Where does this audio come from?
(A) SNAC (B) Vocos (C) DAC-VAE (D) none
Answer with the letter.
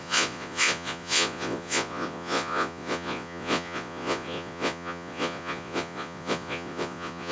B